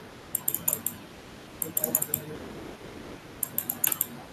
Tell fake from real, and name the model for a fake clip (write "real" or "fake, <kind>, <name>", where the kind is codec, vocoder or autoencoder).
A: real